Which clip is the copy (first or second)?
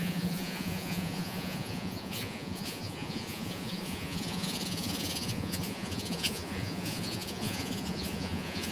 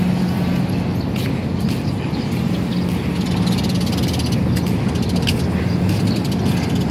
first